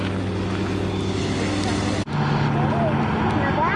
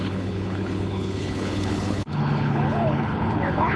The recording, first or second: first